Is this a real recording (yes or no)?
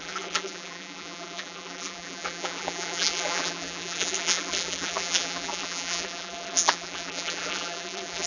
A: no